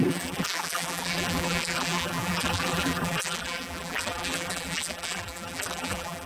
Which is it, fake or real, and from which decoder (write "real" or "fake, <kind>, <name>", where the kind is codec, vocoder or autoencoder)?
fake, vocoder, BigVGAN v2